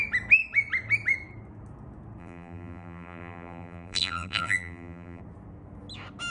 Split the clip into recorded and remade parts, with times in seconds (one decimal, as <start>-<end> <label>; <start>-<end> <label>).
0.0-2.2 recorded; 2.2-5.2 remade; 5.2-6.3 recorded